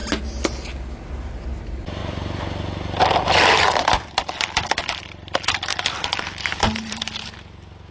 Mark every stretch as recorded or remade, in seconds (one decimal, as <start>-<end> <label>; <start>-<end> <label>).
0.0-2.0 recorded; 2.0-5.0 remade; 5.0-5.7 recorded; 5.7-7.0 remade; 7.0-7.9 recorded